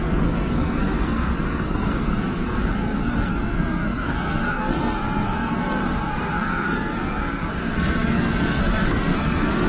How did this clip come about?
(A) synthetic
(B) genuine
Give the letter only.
A